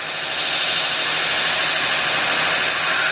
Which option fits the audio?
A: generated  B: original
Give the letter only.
B